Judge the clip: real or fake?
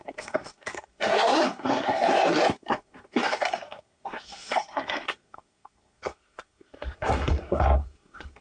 fake